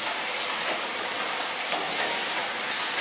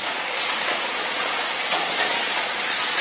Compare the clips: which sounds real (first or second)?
first